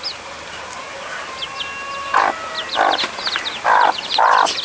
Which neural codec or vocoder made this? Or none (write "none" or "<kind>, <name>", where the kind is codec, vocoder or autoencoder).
none